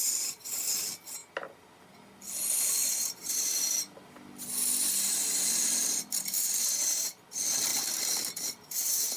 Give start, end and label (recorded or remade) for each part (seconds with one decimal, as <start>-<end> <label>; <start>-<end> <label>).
0.0-7.7 recorded; 7.7-9.2 remade